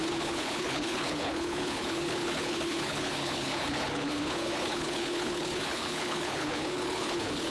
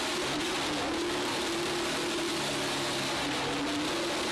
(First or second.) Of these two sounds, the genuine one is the second